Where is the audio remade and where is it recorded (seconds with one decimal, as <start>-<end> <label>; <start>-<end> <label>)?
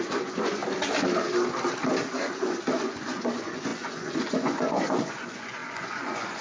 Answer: 0.0-0.6 remade; 0.6-2.2 recorded; 2.2-6.4 remade